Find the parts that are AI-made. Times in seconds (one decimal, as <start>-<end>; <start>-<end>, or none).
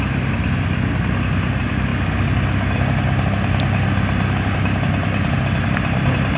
none